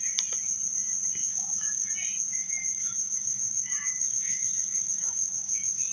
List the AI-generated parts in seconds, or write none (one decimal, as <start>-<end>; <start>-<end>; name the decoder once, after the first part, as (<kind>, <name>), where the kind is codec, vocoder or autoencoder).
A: 1.2-1.9 (autoencoder, DAC-VAE); 2.4-5.9